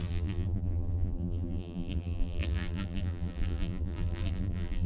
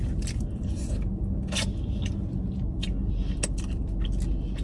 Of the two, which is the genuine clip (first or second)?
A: second